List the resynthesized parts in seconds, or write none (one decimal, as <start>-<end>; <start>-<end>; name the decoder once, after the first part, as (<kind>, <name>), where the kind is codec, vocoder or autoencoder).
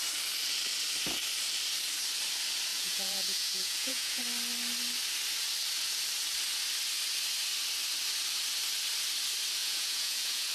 2.7-4.2 (vocoder, Vocos); 9.6-10.5